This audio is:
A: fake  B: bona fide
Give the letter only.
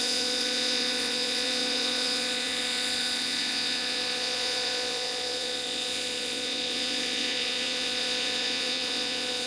A